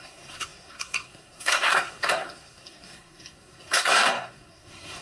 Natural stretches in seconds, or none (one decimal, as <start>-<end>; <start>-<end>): none